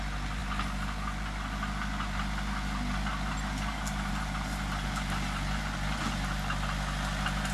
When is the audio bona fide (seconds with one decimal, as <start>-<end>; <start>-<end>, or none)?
0.0-7.5